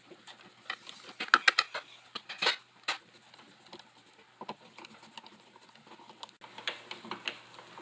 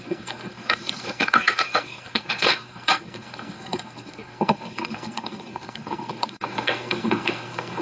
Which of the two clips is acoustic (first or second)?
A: first